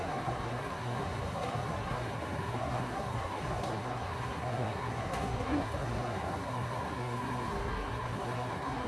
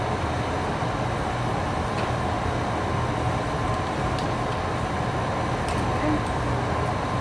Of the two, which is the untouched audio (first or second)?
second